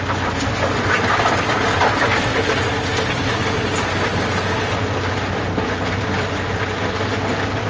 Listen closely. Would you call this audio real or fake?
real